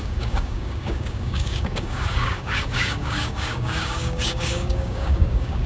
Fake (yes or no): yes